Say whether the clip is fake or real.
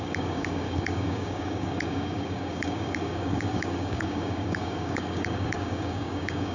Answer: fake